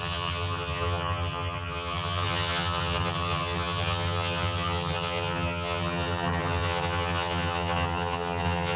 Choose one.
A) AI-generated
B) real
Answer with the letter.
A